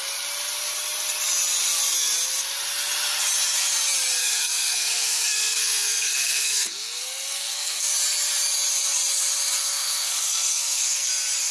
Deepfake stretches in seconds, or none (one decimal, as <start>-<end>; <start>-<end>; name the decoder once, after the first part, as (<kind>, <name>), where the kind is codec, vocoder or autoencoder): 4.2-7.9 (codec, SNAC); 9.6-11.1